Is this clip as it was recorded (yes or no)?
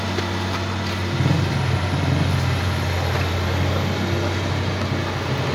yes